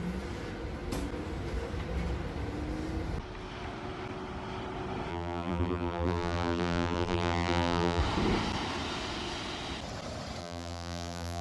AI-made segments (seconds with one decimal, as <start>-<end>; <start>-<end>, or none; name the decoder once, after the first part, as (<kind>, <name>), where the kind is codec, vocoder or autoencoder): 5.1-8.0 (vocoder, BigVGAN v2); 10.4-11.4